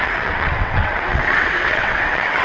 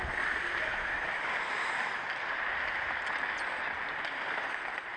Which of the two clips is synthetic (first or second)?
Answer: first